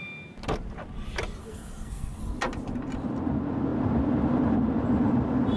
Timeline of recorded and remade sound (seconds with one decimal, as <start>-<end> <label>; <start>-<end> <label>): 0.0-1.4 recorded; 1.4-2.2 remade; 2.2-5.6 recorded